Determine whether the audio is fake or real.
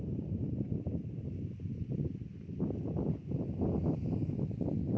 real